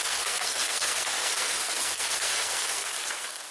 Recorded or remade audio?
remade